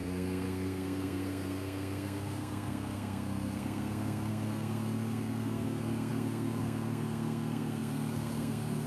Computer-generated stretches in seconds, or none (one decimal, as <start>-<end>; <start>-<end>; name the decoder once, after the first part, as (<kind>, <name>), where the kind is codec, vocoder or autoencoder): 0.0-8.9 (codec, SNAC)